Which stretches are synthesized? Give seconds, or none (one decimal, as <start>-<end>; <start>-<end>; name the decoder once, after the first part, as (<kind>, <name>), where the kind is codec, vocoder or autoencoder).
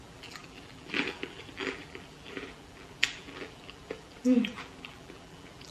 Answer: 0.0-5.7 (vocoder, BigVGAN v2)